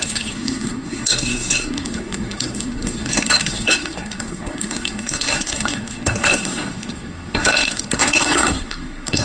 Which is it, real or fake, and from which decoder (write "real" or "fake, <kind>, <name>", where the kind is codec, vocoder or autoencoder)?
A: fake, codec, SNAC